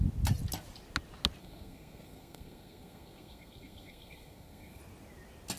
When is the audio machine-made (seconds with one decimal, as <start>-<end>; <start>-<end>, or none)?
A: 1.4-4.8